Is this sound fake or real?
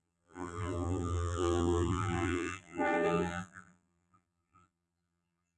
fake